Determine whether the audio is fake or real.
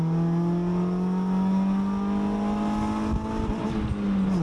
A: real